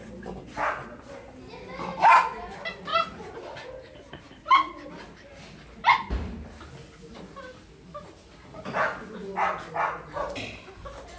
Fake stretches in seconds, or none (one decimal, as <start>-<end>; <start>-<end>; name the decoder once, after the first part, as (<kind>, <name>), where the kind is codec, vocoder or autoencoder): none